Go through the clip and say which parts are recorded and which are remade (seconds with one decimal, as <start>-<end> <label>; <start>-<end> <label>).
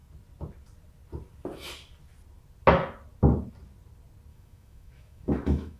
0.0-4.3 recorded; 4.3-5.8 remade